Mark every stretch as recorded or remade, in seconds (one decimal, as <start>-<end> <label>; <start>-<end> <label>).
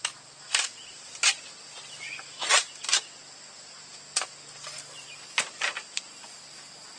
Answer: 0.0-7.0 recorded